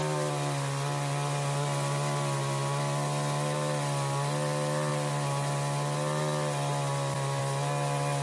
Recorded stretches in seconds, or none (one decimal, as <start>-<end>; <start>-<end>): 0.0-8.2